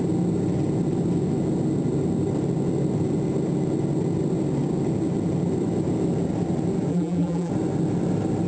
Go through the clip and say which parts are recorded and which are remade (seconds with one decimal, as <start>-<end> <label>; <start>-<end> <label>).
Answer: 0.0-6.9 recorded; 6.9-7.5 remade; 7.5-8.5 recorded